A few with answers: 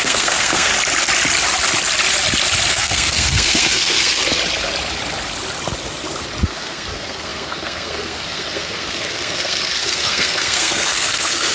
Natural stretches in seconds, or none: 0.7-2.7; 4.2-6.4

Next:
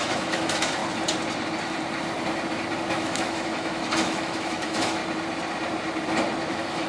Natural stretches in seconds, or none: 0.8-2.9; 5.0-6.5